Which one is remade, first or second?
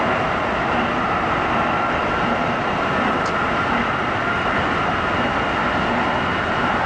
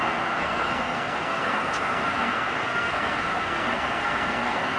second